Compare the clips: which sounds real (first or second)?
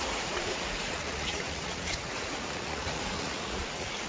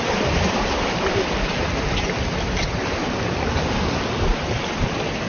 second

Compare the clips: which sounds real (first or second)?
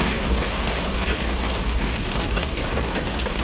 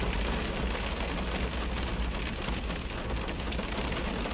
second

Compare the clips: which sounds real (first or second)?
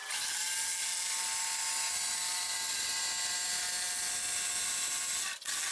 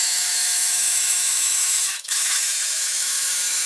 first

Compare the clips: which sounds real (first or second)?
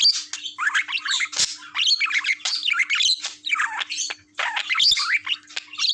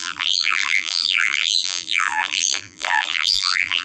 first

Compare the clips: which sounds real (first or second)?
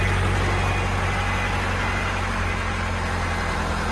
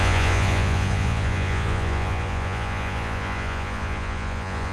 first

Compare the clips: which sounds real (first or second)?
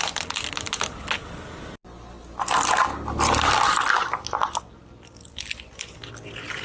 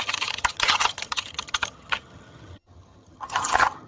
first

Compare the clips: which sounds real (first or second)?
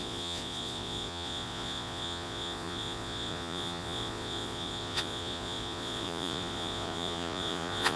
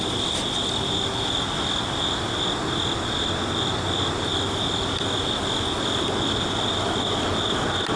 second